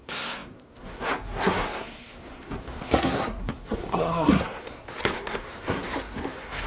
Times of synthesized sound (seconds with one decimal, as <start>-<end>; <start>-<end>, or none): 0.0-6.7